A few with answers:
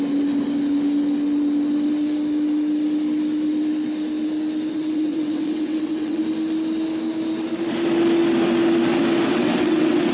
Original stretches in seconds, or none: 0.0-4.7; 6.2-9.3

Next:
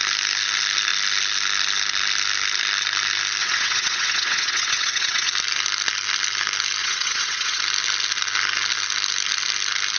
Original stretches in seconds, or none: 0.0-3.4; 5.3-6.8; 7.6-10.0

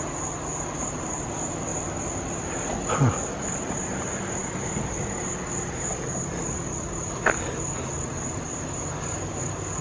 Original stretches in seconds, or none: 0.0-9.8

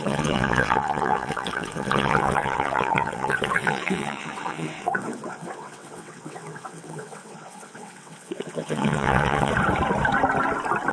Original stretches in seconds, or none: 9.5-10.9

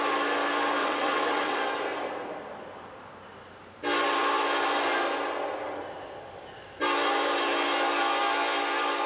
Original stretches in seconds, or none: 0.0-0.8; 1.6-9.1

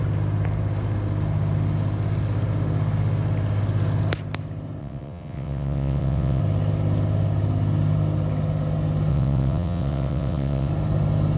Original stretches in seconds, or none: 0.0-4.8; 6.4-9.1; 10.7-11.4